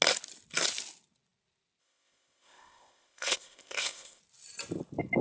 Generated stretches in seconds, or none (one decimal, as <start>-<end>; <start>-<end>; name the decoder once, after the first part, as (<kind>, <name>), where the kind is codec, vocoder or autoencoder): 1.8-4.2 (codec, ZipCodec)